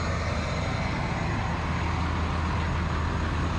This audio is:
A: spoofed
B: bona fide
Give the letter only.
B